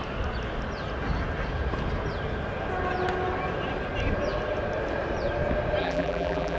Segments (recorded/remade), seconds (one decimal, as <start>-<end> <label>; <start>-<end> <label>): 0.0-5.8 recorded; 5.8-6.6 remade